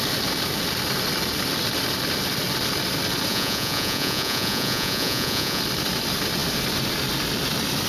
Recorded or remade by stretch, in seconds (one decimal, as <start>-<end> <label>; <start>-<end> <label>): 0.0-3.3 recorded; 3.3-5.6 remade; 5.6-7.9 recorded